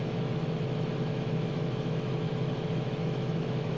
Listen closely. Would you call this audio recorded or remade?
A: remade